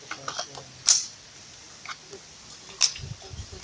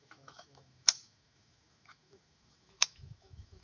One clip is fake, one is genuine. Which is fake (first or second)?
second